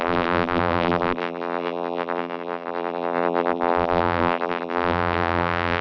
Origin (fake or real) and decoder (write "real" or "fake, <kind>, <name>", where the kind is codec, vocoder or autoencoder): fake, vocoder, BigVGAN v2